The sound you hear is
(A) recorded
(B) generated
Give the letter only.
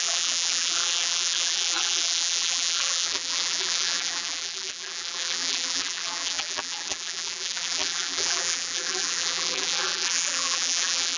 B